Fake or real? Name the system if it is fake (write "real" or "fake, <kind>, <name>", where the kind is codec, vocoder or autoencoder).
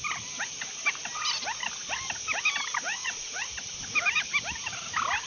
real